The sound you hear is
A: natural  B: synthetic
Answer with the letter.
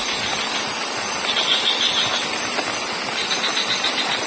A